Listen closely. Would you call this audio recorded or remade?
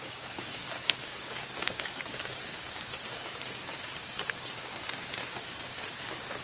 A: remade